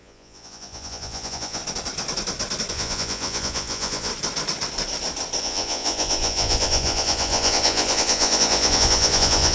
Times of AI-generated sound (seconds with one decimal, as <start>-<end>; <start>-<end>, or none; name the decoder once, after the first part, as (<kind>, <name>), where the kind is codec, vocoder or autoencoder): 0.0-1.6 (vocoder, Vocos); 2.7-4.1; 5.4-9.5